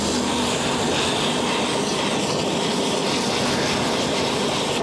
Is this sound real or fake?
real